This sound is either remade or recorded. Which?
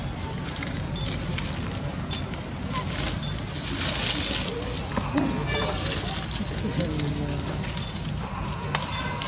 recorded